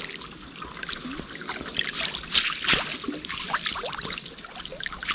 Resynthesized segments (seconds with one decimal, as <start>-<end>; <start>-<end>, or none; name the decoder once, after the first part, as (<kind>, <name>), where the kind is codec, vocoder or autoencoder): none